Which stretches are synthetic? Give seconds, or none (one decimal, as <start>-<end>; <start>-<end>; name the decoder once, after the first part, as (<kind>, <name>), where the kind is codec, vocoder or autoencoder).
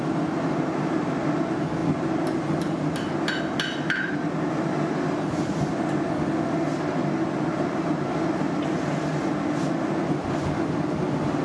none